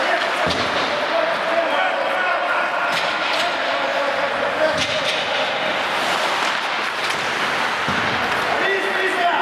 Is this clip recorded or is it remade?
recorded